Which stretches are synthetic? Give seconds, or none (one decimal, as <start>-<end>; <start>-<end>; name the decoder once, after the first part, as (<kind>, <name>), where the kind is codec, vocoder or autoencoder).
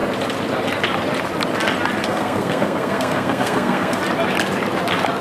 2.0-4.0 (codec, SNAC)